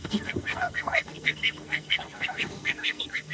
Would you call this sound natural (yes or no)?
no